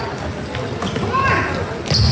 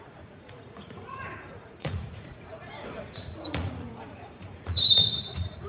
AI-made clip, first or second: second